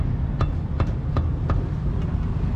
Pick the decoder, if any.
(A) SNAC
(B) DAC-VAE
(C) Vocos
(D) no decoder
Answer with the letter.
D